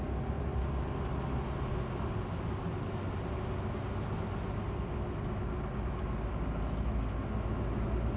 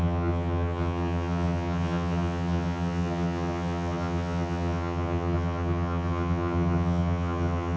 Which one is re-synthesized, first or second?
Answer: second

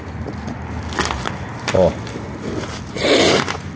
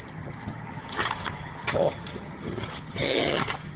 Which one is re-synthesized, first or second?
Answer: second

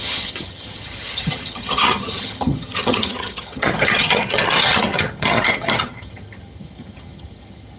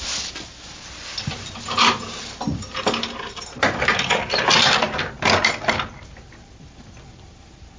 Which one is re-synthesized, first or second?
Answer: first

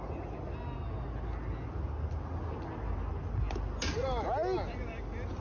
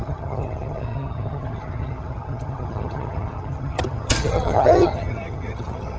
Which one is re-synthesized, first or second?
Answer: second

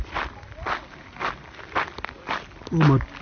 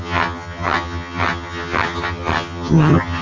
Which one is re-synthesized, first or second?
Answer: second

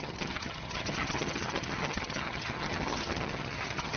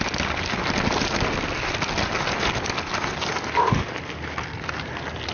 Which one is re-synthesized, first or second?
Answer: first